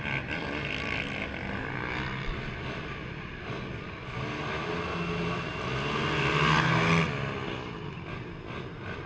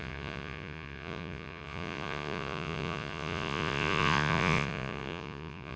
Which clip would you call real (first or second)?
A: first